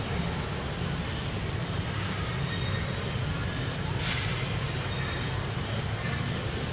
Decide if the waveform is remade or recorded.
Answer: recorded